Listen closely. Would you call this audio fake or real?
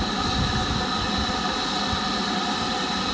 real